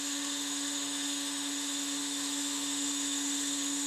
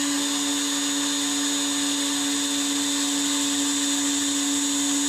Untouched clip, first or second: second